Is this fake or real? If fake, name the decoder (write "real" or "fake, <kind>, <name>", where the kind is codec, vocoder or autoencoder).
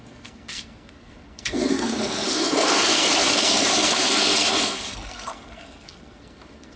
fake, codec, SNAC